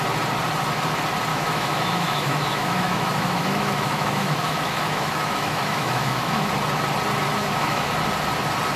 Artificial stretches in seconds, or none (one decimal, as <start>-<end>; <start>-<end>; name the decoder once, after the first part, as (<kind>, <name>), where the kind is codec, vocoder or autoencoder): 1.3-6.5 (autoencoder, DAC-VAE); 7.4-7.9